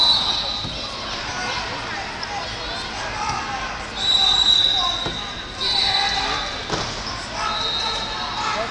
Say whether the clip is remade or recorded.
recorded